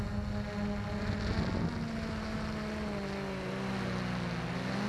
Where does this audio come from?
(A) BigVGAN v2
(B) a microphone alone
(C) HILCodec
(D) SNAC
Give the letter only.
B